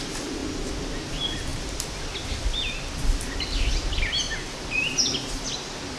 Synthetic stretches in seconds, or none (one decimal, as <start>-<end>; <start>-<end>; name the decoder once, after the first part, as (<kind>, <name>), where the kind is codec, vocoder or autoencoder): none